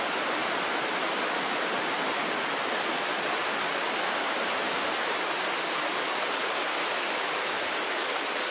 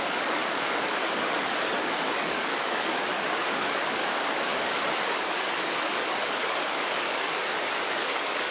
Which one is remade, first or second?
second